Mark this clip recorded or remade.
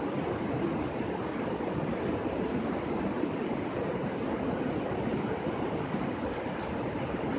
recorded